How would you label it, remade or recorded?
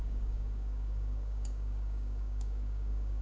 remade